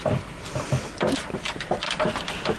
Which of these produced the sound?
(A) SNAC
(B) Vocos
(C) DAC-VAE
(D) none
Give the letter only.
D